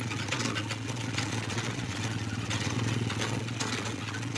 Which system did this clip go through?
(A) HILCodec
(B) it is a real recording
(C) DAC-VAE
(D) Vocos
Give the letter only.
D